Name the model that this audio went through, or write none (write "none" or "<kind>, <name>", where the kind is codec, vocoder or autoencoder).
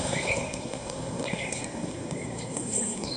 codec, SNAC